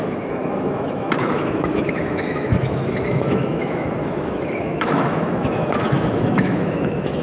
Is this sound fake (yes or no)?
yes